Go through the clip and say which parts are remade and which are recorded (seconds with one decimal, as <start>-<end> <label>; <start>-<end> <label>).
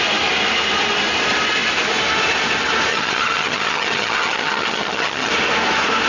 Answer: 0.0-2.9 recorded; 2.9-5.3 remade; 5.3-6.1 recorded